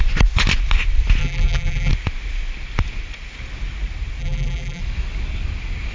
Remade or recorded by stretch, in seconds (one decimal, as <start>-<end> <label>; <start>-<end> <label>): 0.0-1.2 recorded; 1.2-1.9 remade; 1.9-4.2 recorded; 4.2-4.8 remade; 4.8-5.9 recorded